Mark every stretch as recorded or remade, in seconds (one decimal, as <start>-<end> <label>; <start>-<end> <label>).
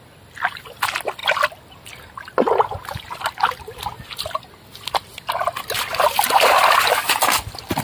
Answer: 0.0-7.8 recorded